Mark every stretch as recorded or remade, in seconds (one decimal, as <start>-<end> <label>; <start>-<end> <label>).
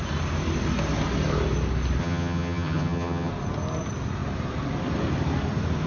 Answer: 0.0-2.0 recorded; 2.0-3.3 remade; 3.3-5.9 recorded